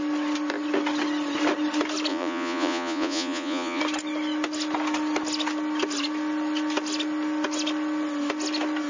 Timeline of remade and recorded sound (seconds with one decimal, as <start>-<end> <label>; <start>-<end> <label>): 0.0-2.1 recorded; 2.1-3.8 remade; 3.8-8.9 recorded